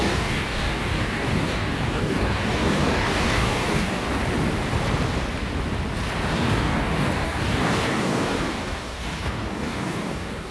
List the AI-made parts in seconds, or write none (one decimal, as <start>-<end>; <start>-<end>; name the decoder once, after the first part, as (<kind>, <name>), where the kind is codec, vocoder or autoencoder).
0.0-4.1 (codec, DAC); 6.3-10.5